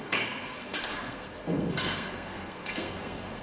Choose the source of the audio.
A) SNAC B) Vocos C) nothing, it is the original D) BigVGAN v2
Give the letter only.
A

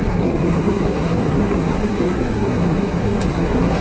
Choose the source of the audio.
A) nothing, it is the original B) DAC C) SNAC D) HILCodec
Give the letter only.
C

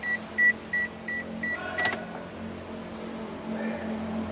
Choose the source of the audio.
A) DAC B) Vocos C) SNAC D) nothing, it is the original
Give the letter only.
D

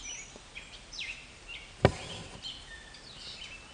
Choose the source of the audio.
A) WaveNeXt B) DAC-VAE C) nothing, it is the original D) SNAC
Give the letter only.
C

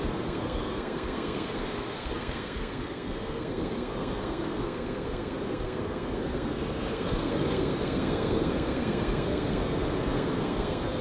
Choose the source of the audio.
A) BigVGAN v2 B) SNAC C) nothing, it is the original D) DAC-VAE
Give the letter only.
B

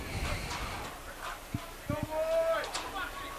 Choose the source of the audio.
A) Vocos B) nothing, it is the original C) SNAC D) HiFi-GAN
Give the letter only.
B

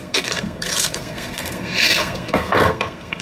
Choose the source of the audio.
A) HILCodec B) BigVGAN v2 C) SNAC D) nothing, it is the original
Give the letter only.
C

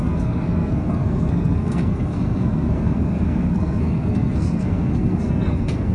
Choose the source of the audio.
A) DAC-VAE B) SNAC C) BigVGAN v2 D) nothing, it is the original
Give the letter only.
B